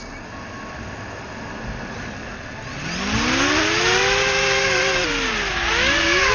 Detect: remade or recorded recorded